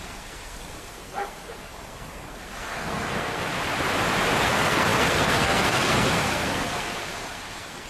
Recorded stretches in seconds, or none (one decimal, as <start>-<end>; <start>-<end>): 3.5-4.4

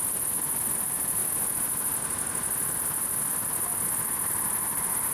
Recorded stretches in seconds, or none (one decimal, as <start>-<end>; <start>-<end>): 0.0-5.1